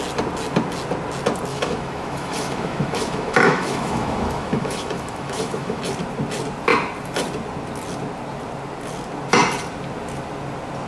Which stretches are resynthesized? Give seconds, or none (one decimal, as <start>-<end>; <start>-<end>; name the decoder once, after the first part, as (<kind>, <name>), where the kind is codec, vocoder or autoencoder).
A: 1.5-5.8 (autoencoder, DAC-VAE)